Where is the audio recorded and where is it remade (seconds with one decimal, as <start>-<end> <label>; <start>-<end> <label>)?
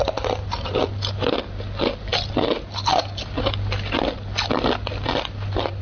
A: 0.0-5.8 recorded